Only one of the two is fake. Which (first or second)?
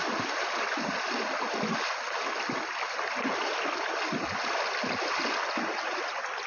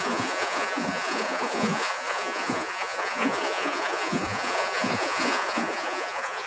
second